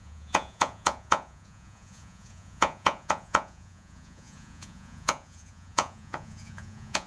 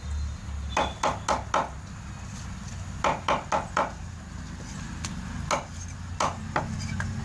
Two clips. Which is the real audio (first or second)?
second